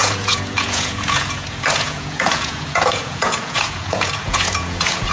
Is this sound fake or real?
fake